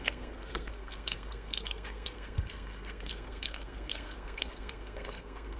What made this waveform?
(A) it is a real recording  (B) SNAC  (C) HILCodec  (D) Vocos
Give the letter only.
B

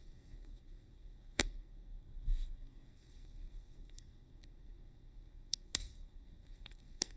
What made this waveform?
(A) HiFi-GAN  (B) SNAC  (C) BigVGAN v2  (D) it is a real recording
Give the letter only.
B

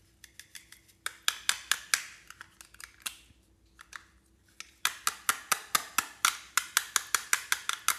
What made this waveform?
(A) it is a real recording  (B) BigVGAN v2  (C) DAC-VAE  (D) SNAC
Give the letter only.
A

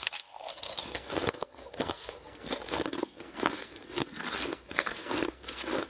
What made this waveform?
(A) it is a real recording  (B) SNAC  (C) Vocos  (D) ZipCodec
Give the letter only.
B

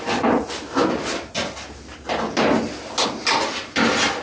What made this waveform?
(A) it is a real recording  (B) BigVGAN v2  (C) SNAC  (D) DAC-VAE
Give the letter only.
A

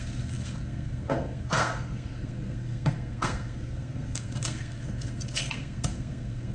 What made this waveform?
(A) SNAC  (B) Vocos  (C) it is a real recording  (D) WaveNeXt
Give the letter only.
A